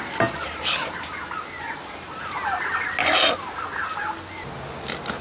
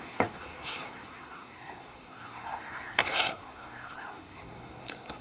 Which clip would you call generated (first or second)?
second